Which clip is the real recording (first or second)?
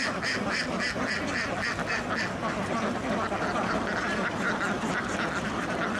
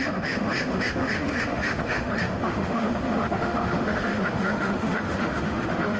first